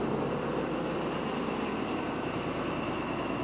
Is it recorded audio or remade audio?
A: recorded